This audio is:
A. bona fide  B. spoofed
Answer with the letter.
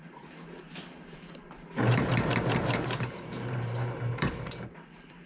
B